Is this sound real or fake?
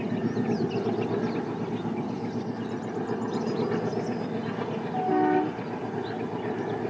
real